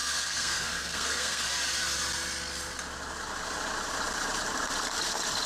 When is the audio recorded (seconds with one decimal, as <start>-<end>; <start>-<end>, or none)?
1.5-5.5